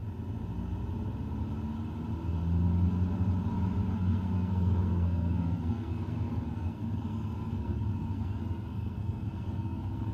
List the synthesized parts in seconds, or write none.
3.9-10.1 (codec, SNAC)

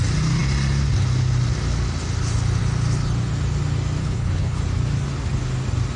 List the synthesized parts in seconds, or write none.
4.0-4.6 (codec, HILCodec)

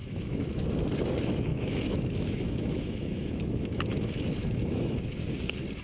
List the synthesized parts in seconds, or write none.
0.0-0.6 (autoencoder, DAC-VAE); 1.5-5.0

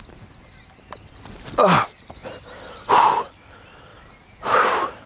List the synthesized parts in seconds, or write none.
3.9-5.1 (vocoder, BigVGAN v2)